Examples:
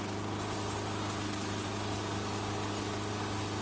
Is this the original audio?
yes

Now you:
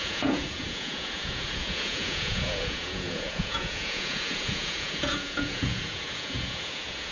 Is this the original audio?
no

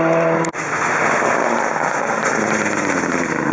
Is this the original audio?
yes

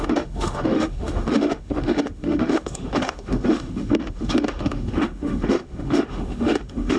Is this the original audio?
no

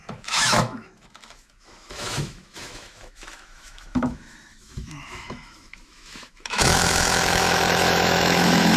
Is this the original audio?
no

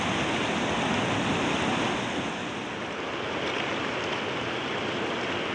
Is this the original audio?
yes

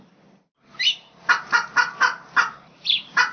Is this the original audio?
yes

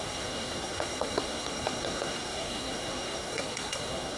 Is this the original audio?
no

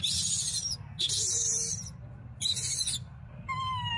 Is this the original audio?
yes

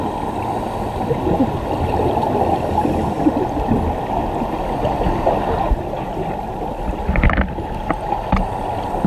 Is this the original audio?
yes